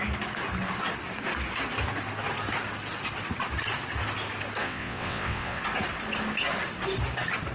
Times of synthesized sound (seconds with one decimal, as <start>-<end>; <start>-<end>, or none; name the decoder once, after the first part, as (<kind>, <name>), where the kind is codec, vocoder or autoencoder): 4.6-5.6 (vocoder, WaveNeXt)